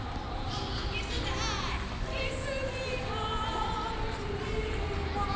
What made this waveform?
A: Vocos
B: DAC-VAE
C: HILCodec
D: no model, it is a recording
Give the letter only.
D